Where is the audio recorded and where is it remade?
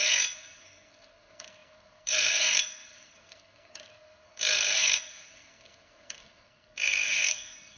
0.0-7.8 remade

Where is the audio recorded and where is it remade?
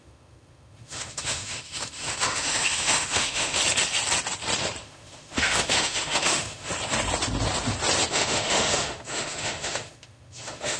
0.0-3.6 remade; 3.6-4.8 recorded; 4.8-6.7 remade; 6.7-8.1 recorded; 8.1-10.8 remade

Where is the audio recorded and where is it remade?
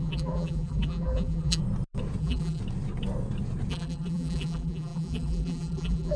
0.0-1.6 remade; 1.6-2.2 recorded; 2.2-2.6 remade; 2.6-3.7 recorded; 3.7-6.2 remade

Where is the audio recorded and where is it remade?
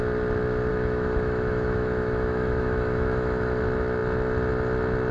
0.0-0.7 recorded; 0.7-3.6 remade; 3.6-5.1 recorded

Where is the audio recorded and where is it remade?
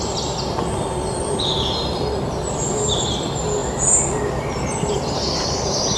0.0-6.0 recorded